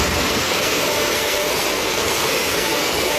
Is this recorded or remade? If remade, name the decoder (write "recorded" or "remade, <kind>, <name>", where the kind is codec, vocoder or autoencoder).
remade, codec, SNAC